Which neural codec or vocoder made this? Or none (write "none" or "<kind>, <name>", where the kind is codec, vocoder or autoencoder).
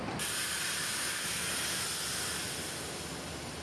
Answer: none